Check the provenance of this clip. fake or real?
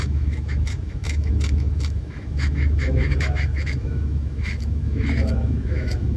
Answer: fake